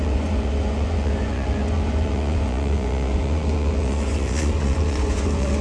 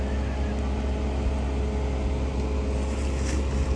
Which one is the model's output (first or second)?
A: first